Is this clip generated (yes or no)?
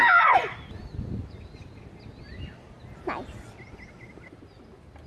no